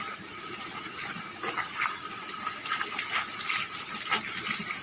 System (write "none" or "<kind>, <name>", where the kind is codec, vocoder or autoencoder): none